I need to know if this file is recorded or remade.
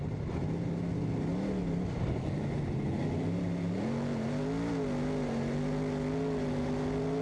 recorded